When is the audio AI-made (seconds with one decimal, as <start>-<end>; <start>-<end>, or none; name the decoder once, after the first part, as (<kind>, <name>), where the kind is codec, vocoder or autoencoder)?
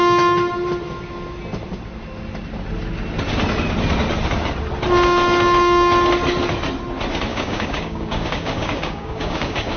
7.3-9.8 (codec, DAC)